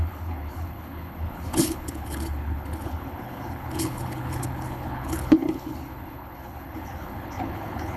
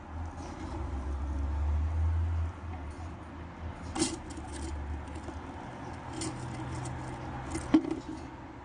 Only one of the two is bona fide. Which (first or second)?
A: second